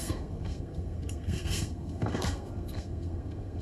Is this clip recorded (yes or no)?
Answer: no